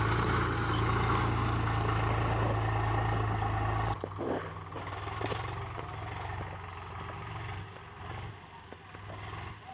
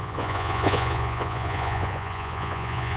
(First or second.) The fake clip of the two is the second